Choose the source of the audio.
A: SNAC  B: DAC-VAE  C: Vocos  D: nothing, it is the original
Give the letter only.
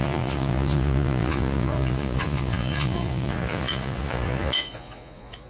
C